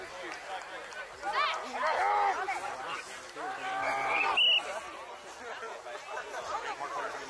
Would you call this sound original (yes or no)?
yes